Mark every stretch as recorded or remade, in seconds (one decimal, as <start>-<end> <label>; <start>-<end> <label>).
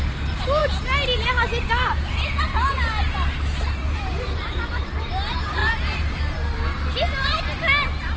0.0-3.8 recorded; 3.8-5.0 remade; 5.0-5.6 recorded; 5.6-6.2 remade; 6.2-8.2 recorded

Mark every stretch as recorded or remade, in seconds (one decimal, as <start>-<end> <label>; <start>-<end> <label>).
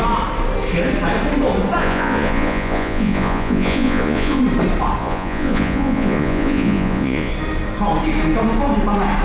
0.0-1.8 recorded; 1.8-4.4 remade; 4.4-5.0 recorded; 5.0-7.3 remade; 7.3-9.2 recorded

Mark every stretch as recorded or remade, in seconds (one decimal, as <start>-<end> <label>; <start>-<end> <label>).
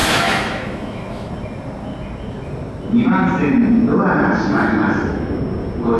0.0-1.3 remade; 1.3-4.8 recorded; 4.8-5.4 remade; 5.4-6.0 recorded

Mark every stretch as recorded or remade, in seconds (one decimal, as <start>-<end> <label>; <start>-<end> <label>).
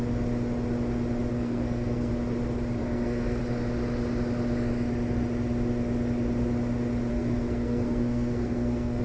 0.0-1.3 recorded; 1.3-2.1 remade; 2.1-2.8 recorded; 2.8-3.4 remade; 3.4-7.1 recorded; 7.1-9.0 remade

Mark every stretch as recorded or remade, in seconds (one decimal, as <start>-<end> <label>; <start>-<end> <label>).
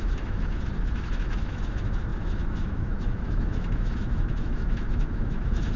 0.0-5.8 remade